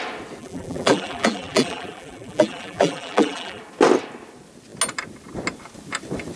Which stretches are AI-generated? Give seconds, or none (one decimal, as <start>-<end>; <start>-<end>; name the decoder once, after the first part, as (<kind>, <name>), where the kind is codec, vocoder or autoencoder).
0.4-3.6 (vocoder, BigVGAN v2)